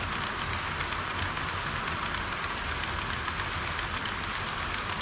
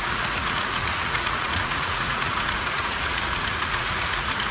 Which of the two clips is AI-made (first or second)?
second